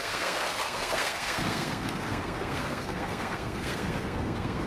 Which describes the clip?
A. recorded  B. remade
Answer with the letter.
B